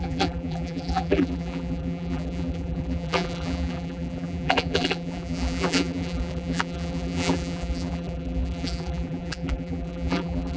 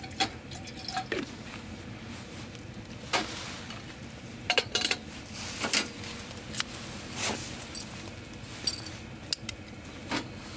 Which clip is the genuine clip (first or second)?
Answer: second